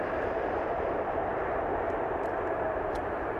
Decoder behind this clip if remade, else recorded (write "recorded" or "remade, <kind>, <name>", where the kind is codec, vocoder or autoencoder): remade, vocoder, BigVGAN v2